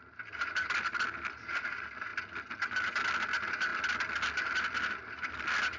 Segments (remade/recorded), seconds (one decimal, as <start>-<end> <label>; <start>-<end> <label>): 0.0-5.8 recorded